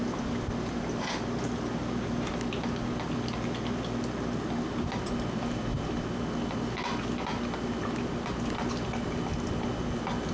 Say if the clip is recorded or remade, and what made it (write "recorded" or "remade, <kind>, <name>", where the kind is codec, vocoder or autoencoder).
recorded